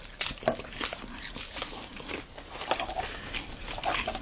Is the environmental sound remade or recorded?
recorded